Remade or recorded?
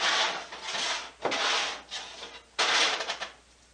recorded